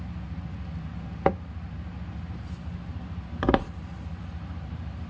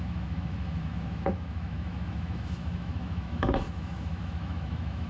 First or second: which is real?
first